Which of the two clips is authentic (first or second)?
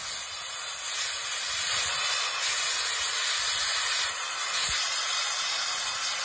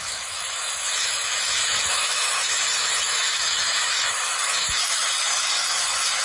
first